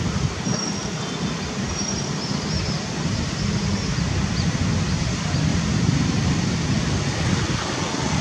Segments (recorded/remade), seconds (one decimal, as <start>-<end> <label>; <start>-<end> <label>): 0.0-5.5 recorded; 5.5-6.8 remade; 6.8-8.2 recorded